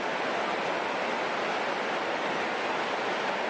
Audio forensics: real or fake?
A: real